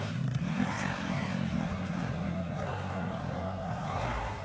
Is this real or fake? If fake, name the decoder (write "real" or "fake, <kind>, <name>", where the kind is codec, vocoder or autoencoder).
fake, codec, SNAC